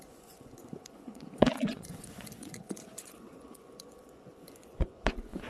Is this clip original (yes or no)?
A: no